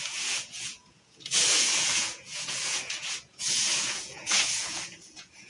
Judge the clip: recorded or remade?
remade